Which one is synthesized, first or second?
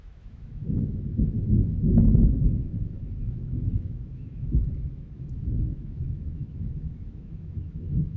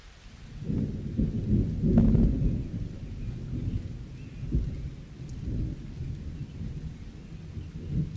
first